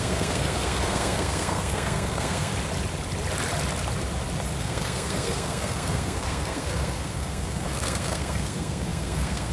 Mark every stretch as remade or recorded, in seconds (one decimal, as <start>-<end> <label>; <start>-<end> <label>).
0.0-2.5 remade; 2.5-4.6 recorded; 4.6-9.5 remade